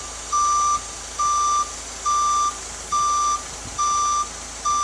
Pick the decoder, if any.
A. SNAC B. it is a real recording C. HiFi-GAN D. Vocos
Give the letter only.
B